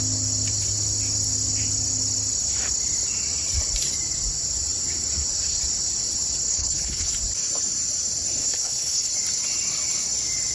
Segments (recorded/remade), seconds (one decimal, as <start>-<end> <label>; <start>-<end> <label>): 0.0-6.5 recorded; 6.5-7.1 remade; 7.1-8.4 recorded; 8.4-9.1 remade; 9.1-10.5 recorded